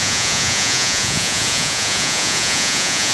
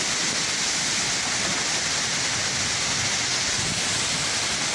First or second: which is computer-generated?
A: first